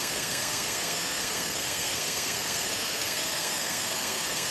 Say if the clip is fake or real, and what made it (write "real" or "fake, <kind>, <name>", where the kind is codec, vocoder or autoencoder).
fake, codec, SNAC